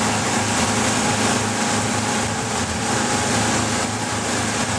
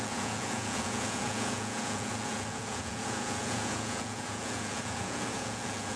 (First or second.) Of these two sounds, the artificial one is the second